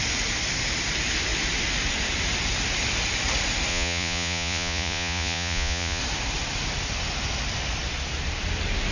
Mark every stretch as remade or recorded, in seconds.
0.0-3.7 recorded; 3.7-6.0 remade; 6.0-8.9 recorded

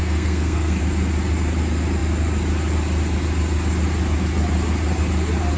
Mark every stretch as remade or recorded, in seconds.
0.0-0.8 remade; 0.8-5.6 recorded

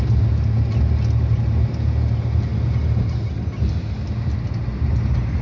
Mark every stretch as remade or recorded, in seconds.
0.0-5.4 recorded